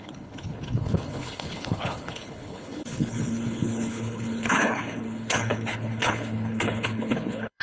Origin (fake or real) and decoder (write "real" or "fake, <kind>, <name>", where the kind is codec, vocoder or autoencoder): fake, codec, HILCodec